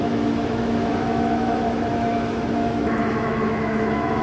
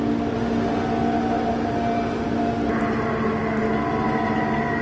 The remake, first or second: first